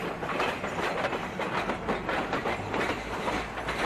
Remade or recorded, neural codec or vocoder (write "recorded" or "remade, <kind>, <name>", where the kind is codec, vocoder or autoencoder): recorded